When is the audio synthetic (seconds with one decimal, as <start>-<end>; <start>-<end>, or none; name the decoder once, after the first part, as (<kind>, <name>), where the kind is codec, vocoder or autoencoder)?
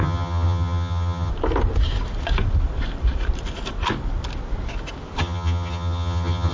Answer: 0.0-1.3 (vocoder, HiFi-GAN); 5.2-6.5